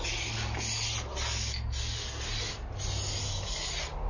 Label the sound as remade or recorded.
recorded